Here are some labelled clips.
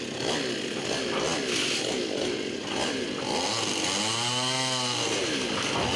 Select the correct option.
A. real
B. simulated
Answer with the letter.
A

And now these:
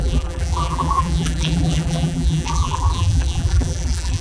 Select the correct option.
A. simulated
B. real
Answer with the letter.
A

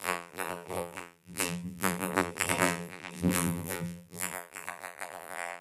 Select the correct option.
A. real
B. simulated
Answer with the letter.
B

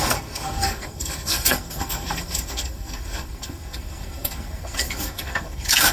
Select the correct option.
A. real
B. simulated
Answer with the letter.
B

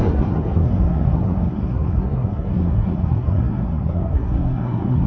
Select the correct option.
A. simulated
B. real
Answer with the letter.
A